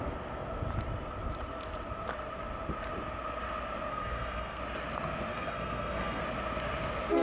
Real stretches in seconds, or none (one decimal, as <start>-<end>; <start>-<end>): 0.0-3.9; 4.6-5.3; 6.2-7.2